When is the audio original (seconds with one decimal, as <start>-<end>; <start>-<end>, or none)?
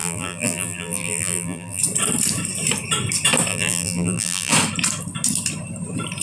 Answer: 1.8-3.5; 4.5-6.2